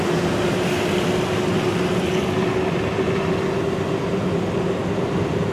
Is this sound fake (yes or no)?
no